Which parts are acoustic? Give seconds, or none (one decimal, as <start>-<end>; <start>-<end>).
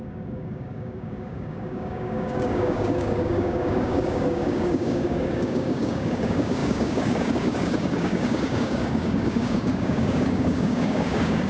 none